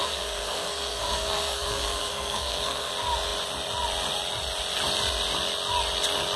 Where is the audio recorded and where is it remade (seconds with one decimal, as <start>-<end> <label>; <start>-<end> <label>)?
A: 0.0-2.9 remade; 2.9-6.4 recorded

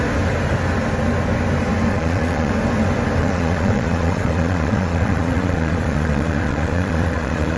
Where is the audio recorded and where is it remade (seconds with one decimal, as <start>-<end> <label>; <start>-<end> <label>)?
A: 0.0-1.9 recorded; 1.9-2.5 remade; 2.5-3.2 recorded; 3.2-7.6 remade

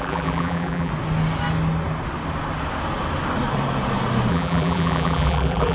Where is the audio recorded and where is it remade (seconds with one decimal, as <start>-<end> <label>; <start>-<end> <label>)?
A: 0.0-0.9 remade; 0.9-4.3 recorded; 4.3-5.7 remade